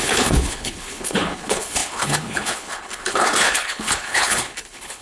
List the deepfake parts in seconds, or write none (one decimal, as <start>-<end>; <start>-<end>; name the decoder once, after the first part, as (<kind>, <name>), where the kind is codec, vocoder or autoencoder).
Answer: 0.0-5.0 (codec, HILCodec)